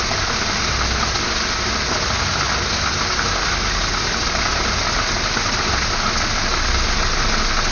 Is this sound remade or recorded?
recorded